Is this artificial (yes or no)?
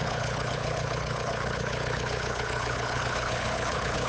yes